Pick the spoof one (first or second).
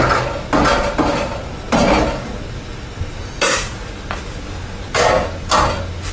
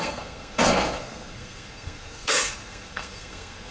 second